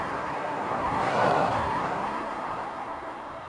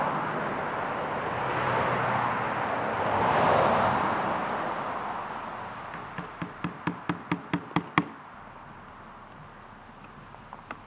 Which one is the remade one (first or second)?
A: first